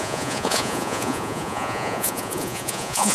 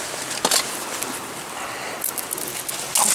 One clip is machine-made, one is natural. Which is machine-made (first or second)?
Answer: first